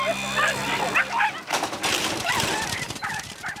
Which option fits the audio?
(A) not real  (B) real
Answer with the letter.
A